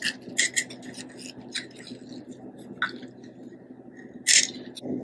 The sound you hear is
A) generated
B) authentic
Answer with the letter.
B